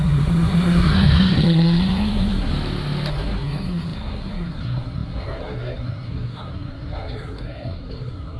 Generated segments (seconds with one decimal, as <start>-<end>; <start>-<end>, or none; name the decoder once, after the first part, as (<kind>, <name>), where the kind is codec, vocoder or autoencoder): 0.0-2.5 (codec, SNAC); 3.1-8.4